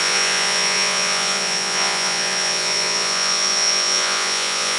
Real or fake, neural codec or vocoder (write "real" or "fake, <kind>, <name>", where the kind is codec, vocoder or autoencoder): fake, vocoder, Vocos